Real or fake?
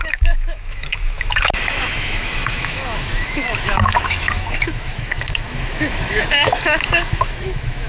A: fake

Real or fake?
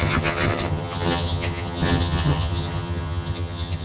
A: fake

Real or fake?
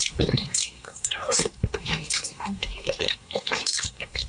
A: fake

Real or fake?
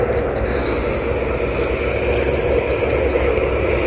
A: real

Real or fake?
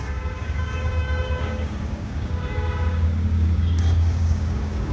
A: fake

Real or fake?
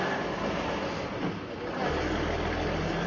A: real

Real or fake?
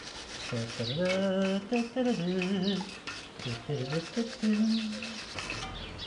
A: real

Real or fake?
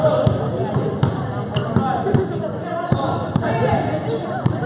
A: real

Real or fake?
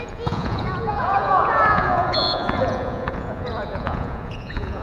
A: fake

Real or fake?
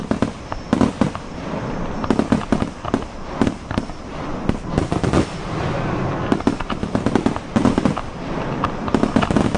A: real